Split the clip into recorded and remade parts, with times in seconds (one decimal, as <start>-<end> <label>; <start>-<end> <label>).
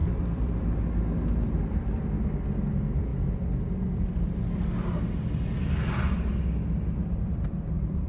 0.0-0.5 remade; 0.5-8.1 recorded